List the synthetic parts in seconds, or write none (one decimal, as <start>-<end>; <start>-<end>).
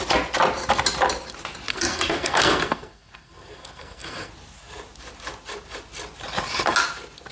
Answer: 1.7-4.3